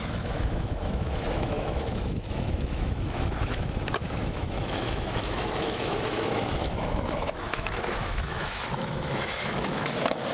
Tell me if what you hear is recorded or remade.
remade